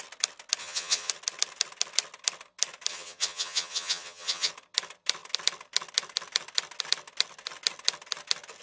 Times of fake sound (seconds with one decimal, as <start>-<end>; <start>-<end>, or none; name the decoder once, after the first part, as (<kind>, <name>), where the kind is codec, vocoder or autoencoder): 0.6-1.1 (vocoder, HiFi-GAN); 2.9-4.5